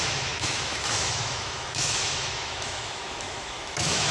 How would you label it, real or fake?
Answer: fake